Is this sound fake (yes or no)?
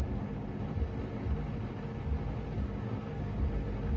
no